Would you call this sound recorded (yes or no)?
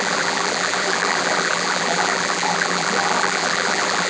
no